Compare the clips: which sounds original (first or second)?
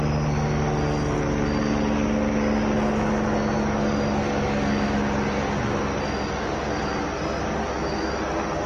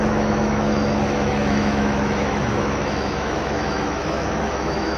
first